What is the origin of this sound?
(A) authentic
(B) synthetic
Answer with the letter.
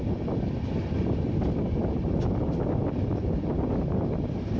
A